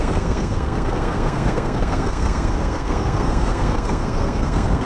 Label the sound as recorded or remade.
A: remade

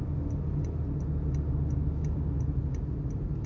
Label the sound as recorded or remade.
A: recorded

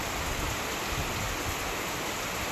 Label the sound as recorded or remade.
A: recorded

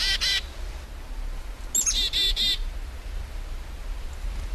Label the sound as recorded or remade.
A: recorded